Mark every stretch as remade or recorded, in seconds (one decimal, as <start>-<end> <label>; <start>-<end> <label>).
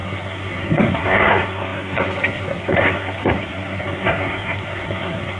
0.0-5.4 remade